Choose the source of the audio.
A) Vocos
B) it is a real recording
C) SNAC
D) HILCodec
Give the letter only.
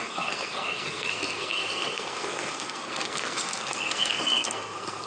C